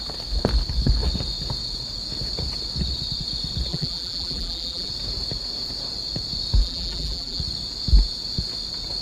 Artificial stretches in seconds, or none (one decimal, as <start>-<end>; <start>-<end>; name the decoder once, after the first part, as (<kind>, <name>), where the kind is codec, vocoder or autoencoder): 3.7-4.9 (vocoder, BigVGAN v2); 6.6-7.4